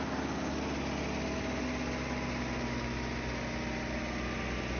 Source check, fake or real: real